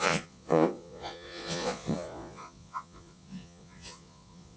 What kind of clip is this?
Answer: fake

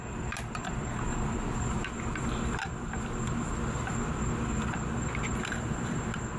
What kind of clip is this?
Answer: real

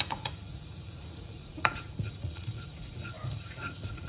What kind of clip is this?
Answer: fake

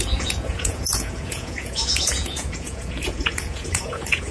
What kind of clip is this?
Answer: fake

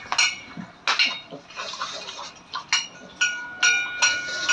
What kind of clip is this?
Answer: real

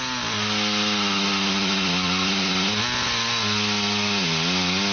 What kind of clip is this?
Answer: real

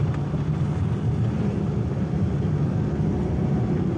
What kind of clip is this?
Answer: real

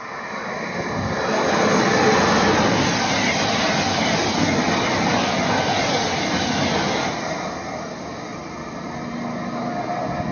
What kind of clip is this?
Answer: real